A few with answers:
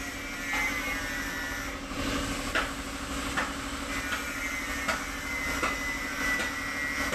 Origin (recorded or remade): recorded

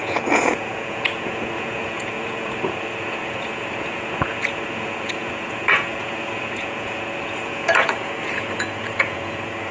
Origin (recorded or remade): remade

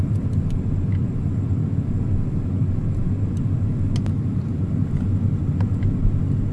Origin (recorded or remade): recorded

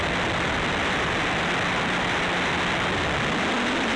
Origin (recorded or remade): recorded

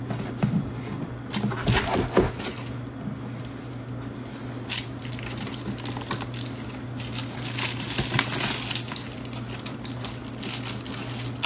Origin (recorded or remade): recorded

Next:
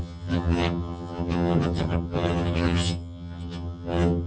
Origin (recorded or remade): remade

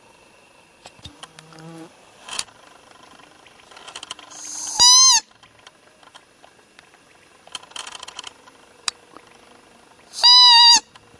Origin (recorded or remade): recorded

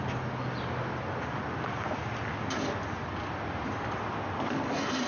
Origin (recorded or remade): recorded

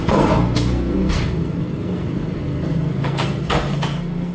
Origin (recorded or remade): remade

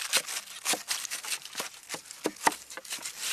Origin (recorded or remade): recorded